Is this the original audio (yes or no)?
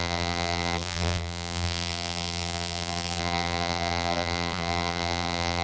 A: no